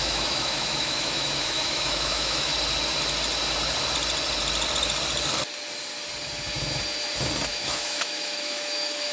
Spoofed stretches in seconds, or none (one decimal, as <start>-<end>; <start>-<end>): 0.0-2.5; 7.5-9.1